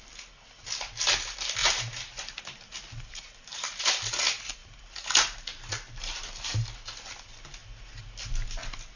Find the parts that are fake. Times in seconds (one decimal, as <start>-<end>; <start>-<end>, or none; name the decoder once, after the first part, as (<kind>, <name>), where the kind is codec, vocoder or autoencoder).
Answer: 1.6-3.8 (vocoder, BigVGAN v2); 4.6-6.4

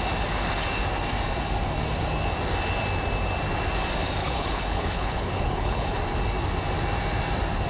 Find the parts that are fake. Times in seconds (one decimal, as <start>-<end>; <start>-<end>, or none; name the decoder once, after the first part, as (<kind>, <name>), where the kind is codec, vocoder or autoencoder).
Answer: 4.2-6.0 (codec, HILCodec)

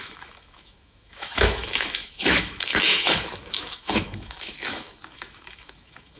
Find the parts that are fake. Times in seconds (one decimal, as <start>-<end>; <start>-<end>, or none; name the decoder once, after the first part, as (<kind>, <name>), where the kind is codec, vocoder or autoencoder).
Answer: 0.0-6.2 (autoencoder, DAC-VAE)

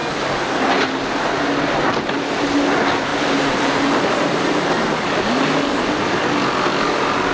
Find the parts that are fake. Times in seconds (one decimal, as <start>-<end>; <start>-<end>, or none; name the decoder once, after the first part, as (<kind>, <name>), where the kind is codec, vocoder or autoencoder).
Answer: 3.1-5.2 (vocoder, BigVGAN v2)

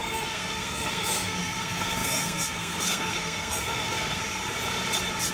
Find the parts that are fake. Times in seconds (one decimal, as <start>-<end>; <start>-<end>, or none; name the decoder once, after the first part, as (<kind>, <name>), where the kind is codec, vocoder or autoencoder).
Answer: 0.0-4.2 (codec, SNAC)